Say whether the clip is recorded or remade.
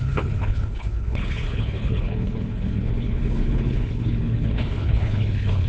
remade